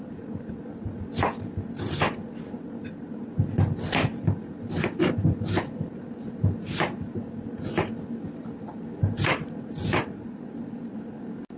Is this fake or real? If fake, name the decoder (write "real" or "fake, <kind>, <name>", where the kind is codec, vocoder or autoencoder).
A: real